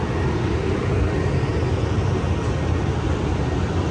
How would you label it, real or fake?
real